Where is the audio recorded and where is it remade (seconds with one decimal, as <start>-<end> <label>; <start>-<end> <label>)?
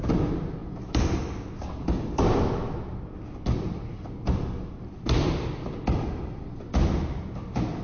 0.0-7.8 recorded